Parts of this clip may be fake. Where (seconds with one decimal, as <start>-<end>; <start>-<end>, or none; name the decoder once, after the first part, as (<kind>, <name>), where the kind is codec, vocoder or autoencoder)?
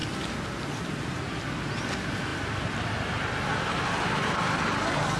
none